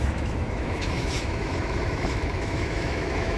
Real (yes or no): no